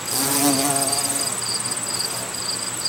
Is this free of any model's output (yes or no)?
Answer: yes